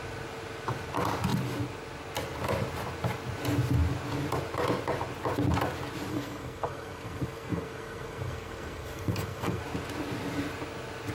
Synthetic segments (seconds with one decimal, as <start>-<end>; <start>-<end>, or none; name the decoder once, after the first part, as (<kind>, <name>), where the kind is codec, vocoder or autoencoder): 6.1-9.6 (codec, SNAC)

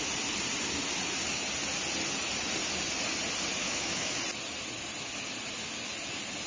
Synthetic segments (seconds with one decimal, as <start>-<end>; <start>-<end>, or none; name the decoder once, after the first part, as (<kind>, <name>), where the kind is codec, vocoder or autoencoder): 3.6-4.2 (autoencoder, DAC-VAE)

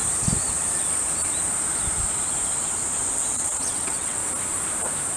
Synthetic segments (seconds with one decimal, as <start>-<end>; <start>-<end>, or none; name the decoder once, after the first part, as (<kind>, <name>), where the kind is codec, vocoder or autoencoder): 3.1-4.2 (vocoder, WaveNeXt)